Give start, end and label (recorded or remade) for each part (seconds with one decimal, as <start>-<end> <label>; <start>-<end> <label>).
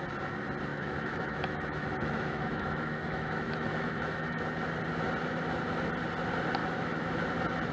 0.0-0.7 recorded; 0.7-4.4 remade; 4.4-6.6 recorded; 6.6-7.2 remade; 7.2-7.7 recorded